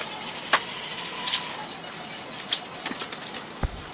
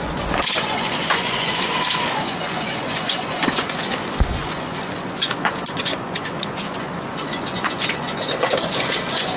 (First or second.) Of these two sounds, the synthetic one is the second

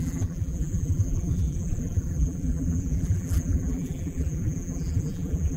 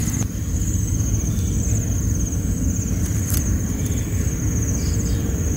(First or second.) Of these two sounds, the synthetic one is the first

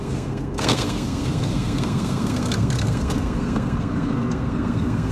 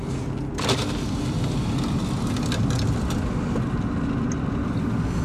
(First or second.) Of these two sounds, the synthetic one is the first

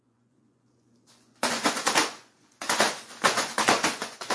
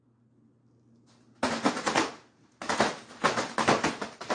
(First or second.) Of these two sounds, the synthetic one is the first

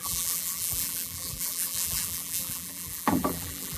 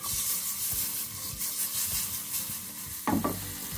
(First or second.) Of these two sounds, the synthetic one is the first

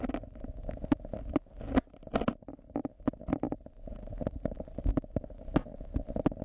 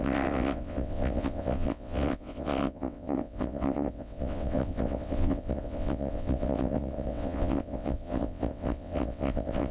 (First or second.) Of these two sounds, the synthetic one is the second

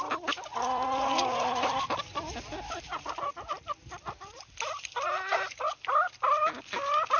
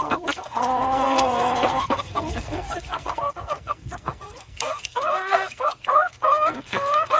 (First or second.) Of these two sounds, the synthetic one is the second